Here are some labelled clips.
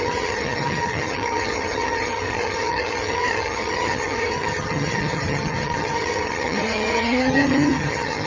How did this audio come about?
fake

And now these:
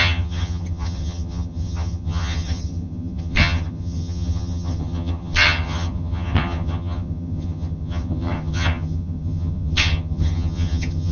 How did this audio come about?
fake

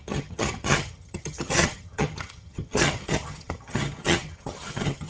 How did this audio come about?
fake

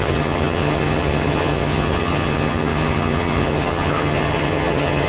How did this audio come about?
fake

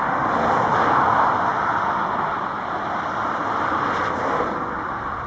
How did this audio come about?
real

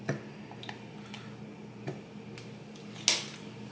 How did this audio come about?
real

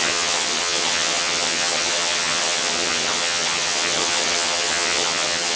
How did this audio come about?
fake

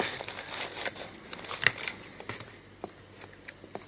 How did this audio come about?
real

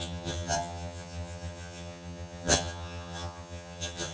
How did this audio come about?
fake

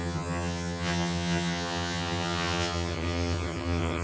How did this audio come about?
fake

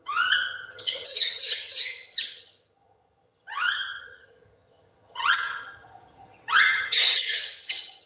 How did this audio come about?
fake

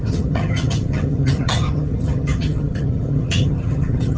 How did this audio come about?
fake